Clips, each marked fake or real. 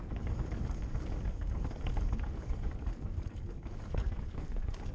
fake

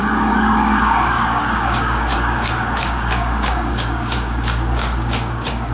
fake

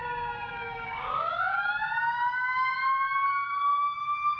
fake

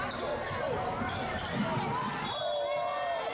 real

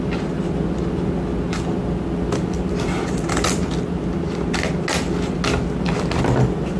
real